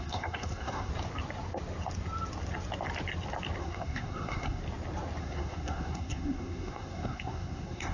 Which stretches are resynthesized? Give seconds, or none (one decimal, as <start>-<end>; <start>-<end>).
0.0-0.9; 3.6-4.6; 5.2-7.9